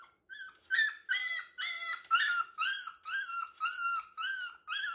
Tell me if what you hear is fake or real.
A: real